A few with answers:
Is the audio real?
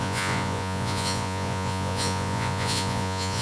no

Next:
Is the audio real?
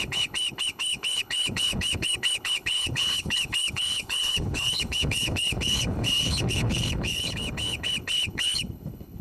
no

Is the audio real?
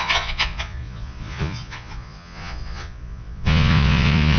no